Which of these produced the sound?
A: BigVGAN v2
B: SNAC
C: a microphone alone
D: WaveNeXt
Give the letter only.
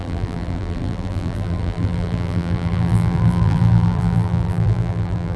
A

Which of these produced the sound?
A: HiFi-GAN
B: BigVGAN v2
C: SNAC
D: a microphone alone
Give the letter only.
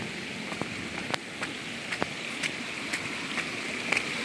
D